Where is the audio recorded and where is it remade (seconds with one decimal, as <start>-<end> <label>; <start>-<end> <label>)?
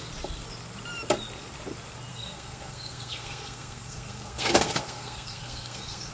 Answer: 0.0-2.1 recorded; 2.1-6.1 remade